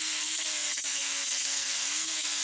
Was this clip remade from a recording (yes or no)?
yes